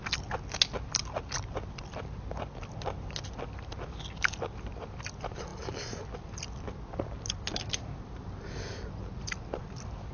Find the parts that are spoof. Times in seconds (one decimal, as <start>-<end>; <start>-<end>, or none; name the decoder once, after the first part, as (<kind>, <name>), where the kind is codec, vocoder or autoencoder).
none